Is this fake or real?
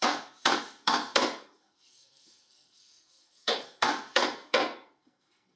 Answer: fake